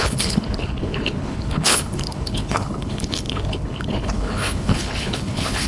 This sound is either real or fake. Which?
fake